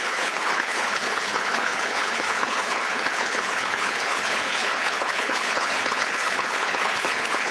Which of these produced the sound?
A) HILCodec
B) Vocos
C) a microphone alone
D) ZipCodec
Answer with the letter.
A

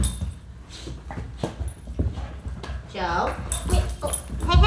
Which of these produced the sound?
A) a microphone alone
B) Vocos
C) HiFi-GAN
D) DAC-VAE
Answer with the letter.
A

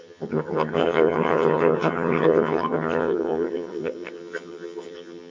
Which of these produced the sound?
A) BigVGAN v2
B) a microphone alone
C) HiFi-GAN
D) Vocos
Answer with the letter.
C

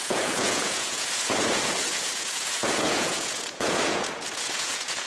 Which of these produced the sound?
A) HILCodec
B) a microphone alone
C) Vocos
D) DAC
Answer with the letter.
C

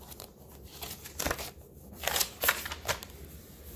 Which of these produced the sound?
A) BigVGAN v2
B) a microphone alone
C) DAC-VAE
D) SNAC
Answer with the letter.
B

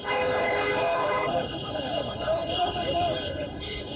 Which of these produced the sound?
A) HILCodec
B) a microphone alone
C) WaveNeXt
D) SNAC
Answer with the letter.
A